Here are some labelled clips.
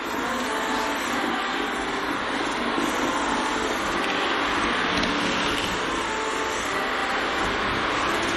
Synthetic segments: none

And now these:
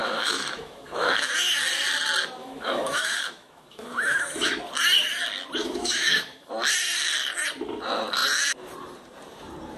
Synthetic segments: 0.0-1.3 (autoencoder, DAC-VAE); 2.4-4.6; 5.6-6.5

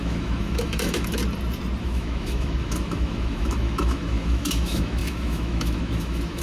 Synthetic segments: 0.0-1.2 (autoencoder, DAC-VAE); 1.8-6.4

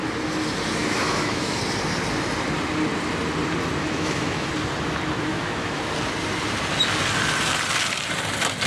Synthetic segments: 0.8-1.6 (autoencoder, DAC-VAE); 3.8-4.5; 5.3-5.8

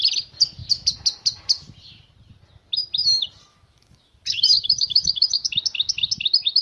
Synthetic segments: 3.5-5.5 (autoencoder, DAC-VAE)

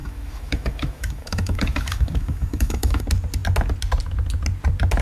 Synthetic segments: 0.0-3.0 (autoencoder, DAC-VAE)

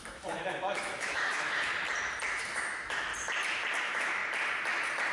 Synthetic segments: 0.0-1.7 (autoencoder, DAC-VAE); 2.3-3.1; 3.8-4.2